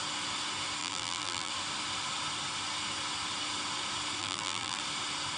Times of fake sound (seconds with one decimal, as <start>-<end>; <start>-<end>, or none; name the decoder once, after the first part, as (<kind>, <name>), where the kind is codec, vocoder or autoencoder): 0.8-1.5 (vocoder, BigVGAN v2); 4.2-4.8